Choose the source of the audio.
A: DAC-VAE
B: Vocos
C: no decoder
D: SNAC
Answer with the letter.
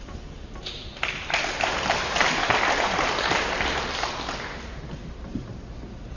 C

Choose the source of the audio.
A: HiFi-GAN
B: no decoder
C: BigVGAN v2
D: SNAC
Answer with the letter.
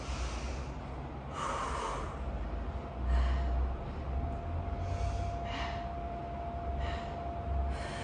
B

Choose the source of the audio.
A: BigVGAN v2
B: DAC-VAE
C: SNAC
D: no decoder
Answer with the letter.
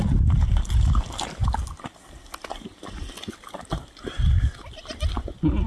D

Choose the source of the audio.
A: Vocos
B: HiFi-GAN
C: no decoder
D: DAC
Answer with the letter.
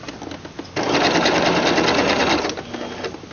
C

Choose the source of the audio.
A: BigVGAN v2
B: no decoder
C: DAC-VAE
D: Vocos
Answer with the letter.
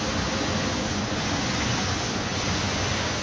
D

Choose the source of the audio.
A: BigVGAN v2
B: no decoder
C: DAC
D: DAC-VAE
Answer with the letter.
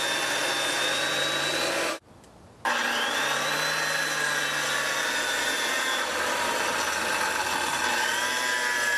B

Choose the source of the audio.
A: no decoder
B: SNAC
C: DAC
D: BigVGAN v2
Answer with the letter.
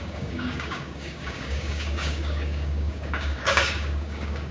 C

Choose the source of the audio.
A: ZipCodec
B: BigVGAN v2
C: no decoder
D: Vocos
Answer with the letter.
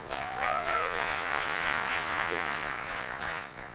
D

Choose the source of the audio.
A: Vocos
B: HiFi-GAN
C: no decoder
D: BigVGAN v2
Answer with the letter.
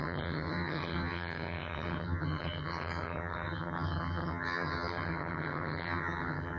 B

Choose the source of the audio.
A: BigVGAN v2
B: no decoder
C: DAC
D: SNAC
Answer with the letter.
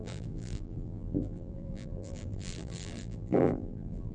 A